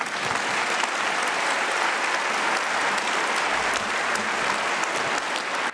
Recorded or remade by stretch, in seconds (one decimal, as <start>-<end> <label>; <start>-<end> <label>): 0.0-2.8 recorded; 2.8-4.0 remade; 4.0-5.7 recorded

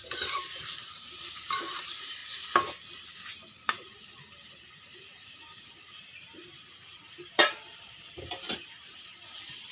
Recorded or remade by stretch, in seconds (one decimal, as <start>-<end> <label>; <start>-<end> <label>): 0.0-2.2 remade; 2.2-4.7 recorded; 4.7-9.7 remade

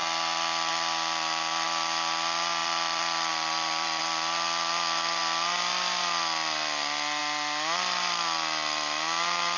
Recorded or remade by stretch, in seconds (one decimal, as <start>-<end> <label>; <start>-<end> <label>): 0.0-2.6 recorded; 2.6-4.0 remade; 4.0-9.6 recorded

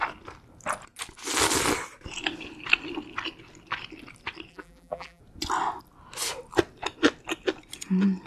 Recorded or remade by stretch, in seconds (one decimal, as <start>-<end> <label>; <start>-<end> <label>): 0.0-4.5 recorded; 4.5-5.2 remade; 5.2-8.3 recorded

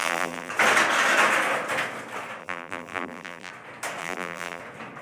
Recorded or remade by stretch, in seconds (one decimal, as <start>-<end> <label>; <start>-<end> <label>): 0.0-0.5 remade; 0.5-2.4 recorded; 2.4-3.5 remade; 3.5-4.0 recorded; 4.0-4.6 remade; 4.6-5.0 recorded